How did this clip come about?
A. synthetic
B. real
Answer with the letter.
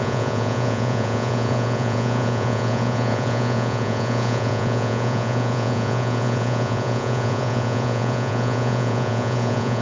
A